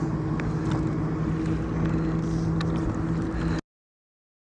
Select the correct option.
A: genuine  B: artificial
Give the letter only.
A